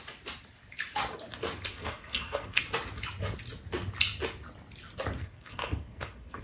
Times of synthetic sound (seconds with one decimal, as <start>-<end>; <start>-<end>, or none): 1.7-2.6; 5.2-6.4